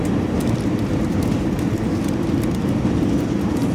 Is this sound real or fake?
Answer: fake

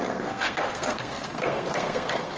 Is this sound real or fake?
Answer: fake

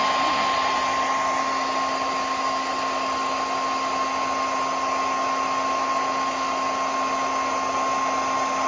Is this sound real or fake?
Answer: real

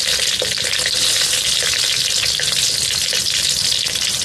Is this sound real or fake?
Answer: real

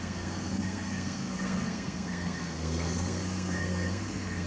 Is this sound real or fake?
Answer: fake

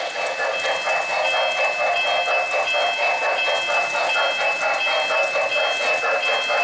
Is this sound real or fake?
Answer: real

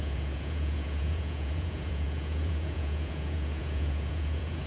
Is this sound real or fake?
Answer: fake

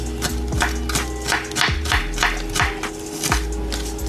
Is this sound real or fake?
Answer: real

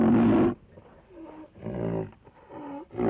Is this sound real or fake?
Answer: real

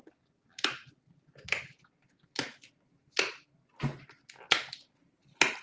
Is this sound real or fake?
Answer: real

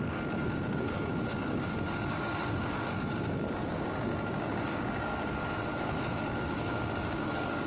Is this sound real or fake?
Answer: fake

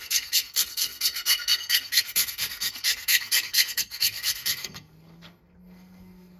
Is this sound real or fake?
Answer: fake